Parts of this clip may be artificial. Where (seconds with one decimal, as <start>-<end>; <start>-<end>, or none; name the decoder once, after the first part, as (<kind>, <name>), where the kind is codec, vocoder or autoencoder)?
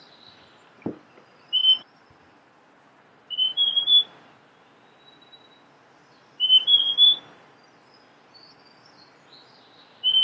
none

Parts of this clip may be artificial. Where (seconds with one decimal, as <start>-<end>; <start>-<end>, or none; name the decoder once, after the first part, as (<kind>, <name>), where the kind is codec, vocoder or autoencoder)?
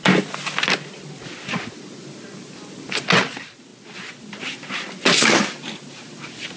none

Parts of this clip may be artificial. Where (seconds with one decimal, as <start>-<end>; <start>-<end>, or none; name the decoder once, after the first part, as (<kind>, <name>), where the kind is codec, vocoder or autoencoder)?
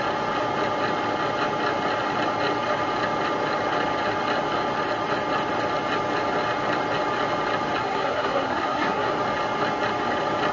7.8-9.1 (codec, SNAC)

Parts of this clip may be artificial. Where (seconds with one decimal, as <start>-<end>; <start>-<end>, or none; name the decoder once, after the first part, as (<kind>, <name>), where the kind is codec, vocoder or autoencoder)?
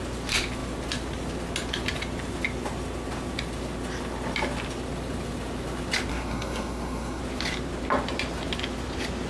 6.1-7.2 (codec, SNAC)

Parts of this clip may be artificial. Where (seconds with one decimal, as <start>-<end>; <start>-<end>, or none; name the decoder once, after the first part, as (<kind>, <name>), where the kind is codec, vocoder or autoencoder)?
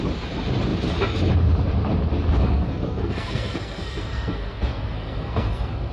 2.3-5.9 (codec, SNAC)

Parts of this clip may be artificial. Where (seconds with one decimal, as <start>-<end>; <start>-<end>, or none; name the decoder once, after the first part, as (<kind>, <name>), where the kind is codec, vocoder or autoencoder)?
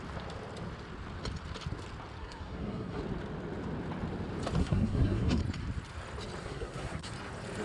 2.2-3.0 (codec, SNAC); 4.6-5.4; 6.4-7.1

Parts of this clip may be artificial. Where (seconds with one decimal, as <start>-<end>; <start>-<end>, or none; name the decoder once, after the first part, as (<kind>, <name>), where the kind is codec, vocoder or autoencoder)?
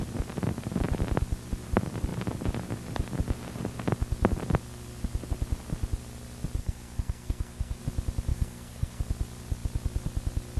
6.6-7.8 (codec, SNAC); 8.3-9.0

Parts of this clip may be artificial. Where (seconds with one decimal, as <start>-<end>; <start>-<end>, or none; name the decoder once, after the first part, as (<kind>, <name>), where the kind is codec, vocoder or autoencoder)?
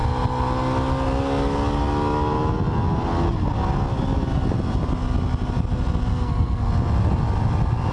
6.1-6.7 (codec, SNAC)